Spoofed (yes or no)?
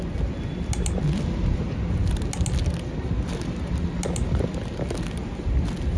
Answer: no